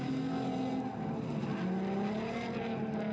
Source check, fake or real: real